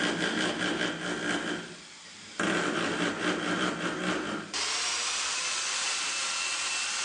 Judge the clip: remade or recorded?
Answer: recorded